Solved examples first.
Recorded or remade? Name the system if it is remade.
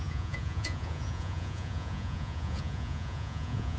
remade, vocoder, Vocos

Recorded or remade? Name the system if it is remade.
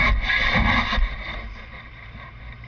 recorded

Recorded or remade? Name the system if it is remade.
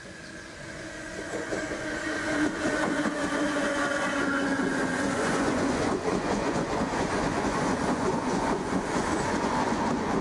remade, vocoder, Vocos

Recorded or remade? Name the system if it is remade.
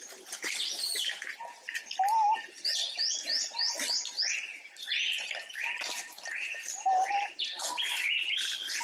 recorded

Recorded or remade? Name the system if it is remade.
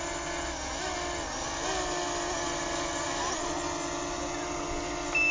recorded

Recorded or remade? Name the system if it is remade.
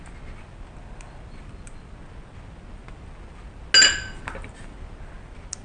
recorded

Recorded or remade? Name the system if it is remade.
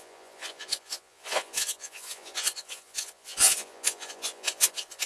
remade, vocoder, Vocos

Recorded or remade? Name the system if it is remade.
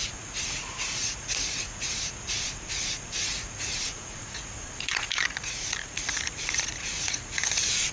remade, vocoder, Vocos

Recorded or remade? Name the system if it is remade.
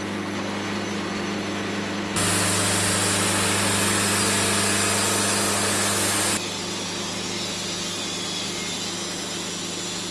recorded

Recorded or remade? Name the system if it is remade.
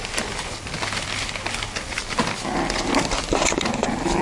recorded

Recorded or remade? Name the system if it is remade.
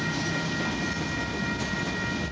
recorded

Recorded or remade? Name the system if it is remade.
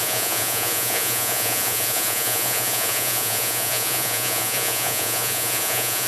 remade, vocoder, Vocos